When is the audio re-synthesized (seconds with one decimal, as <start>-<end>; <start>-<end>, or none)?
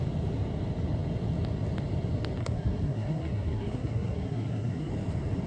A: 2.4-4.9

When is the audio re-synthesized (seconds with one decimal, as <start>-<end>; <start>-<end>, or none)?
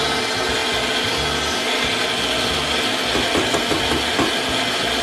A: none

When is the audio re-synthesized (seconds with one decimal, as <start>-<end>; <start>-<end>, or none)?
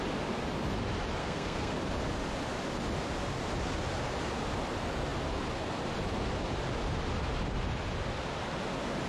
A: 1.2-1.7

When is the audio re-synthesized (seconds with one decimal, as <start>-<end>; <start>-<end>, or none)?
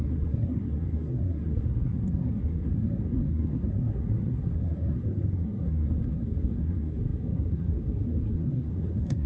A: 0.0-9.3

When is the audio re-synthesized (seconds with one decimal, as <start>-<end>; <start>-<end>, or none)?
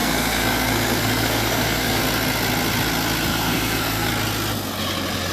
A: 0.0-2.0; 3.3-4.1